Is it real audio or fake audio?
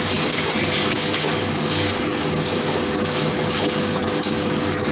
fake